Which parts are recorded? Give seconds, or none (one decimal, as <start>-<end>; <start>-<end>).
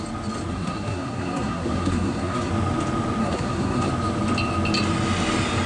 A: 0.0-0.5; 2.5-3.2; 3.9-5.7